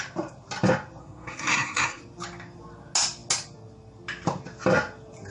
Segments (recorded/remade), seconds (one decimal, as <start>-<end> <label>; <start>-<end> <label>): 0.0-1.0 recorded; 1.0-2.0 remade; 2.0-5.3 recorded

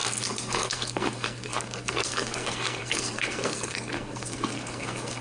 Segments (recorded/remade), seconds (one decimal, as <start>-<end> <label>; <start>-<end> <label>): 0.0-5.2 remade